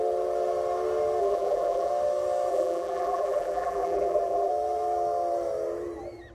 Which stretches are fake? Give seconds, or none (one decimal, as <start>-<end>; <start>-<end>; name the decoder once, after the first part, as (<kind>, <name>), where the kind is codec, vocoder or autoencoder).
1.2-1.9 (vocoder, BigVGAN v2); 2.5-4.5